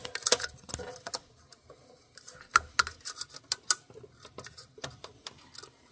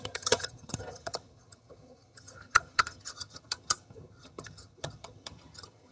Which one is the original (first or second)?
first